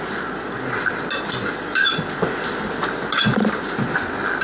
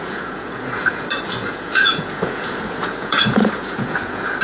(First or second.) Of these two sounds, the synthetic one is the second